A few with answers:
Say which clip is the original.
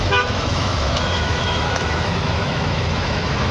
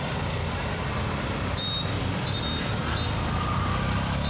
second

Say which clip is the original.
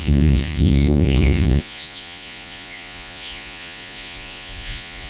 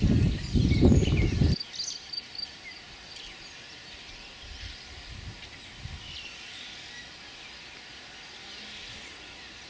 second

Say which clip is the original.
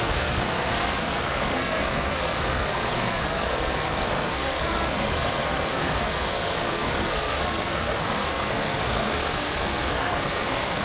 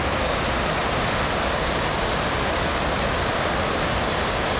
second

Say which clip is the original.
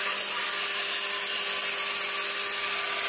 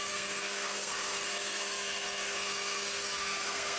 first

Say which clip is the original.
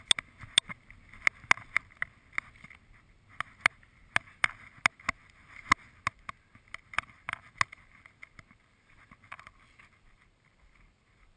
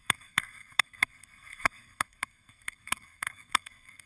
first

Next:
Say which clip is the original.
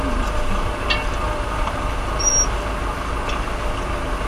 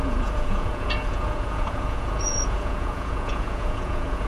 first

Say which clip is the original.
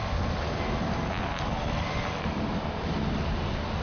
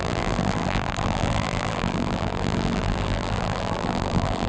first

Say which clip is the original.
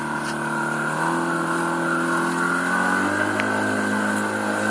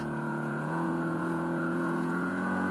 first